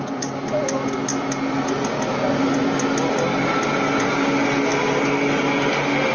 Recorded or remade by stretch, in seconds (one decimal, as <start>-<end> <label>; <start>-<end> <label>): 0.0-6.1 recorded